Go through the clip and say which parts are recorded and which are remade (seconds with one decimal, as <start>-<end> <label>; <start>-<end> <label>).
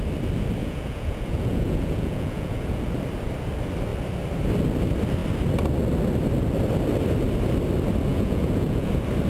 0.0-0.6 recorded; 0.6-2.8 remade; 2.8-8.1 recorded; 8.1-8.9 remade; 8.9-9.3 recorded